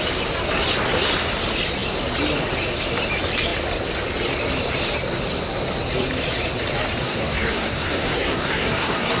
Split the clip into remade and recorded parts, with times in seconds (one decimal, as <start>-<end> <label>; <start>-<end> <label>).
0.0-7.0 recorded; 7.0-9.2 remade